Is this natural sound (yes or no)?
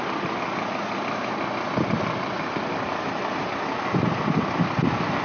yes